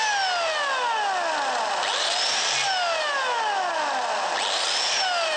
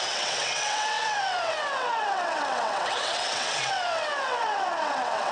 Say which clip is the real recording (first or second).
first